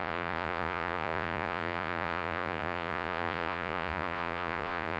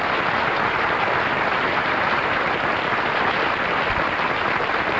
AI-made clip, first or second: first